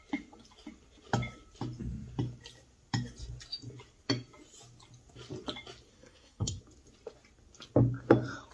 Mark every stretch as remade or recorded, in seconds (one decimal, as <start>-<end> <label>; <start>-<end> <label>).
0.0-5.9 recorded; 5.9-6.6 remade; 6.6-8.5 recorded